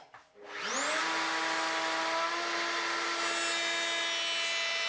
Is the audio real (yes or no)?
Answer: yes